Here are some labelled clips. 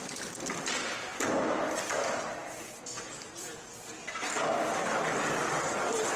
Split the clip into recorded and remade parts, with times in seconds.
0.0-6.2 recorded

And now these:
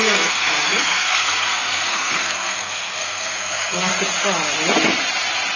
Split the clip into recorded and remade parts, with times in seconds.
0.0-3.9 remade; 3.9-5.6 recorded

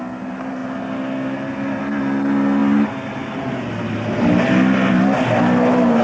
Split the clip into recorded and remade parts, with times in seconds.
0.0-6.0 recorded

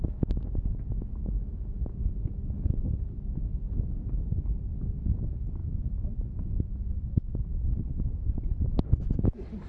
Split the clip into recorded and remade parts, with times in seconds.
0.0-5.6 recorded; 5.6-7.1 remade; 7.1-7.5 recorded; 7.5-9.0 remade; 9.0-9.7 recorded

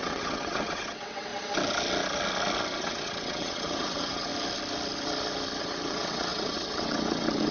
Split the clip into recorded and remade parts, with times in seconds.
0.0-1.3 remade; 1.3-2.8 recorded; 2.8-4.3 remade; 4.3-5.6 recorded; 5.6-7.5 remade

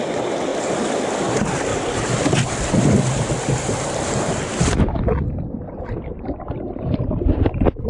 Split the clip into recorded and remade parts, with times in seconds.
0.0-0.5 recorded; 0.5-1.0 remade; 1.0-1.7 recorded; 1.7-6.2 remade; 6.2-7.9 recorded

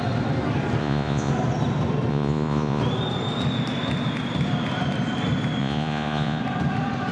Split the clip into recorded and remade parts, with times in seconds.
0.0-0.8 recorded; 0.8-1.3 remade; 1.3-2.1 recorded; 2.1-2.8 remade; 2.8-5.6 recorded; 5.6-6.4 remade; 6.4-7.1 recorded